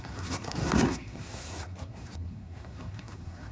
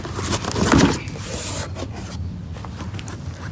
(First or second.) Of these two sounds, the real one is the second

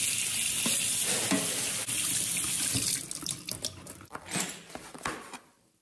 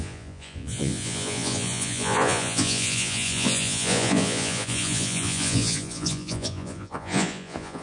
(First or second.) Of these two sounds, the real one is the first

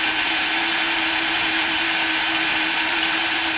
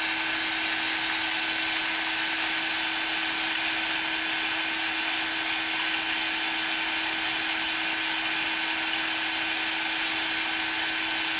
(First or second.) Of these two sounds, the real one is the second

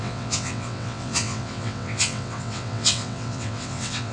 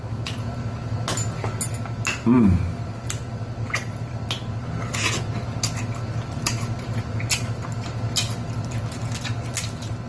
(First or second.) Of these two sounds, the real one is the second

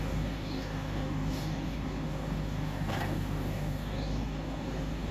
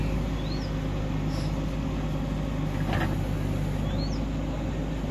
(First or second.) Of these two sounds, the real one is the second